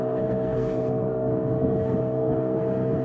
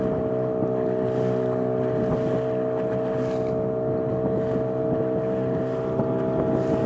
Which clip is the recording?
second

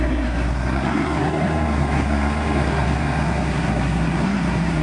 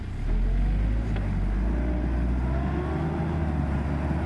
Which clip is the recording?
second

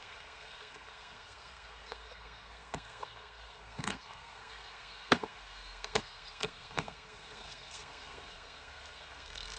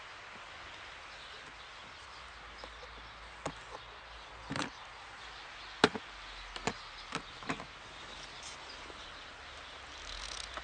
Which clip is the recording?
second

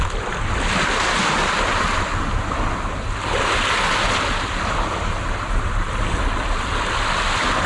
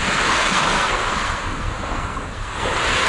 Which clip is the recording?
first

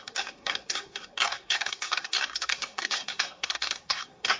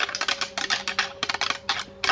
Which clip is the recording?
second